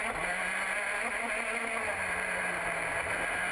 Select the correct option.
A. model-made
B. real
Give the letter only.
B